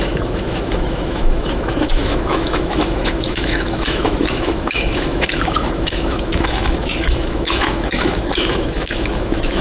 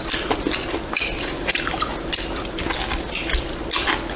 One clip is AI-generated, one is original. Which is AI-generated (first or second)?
first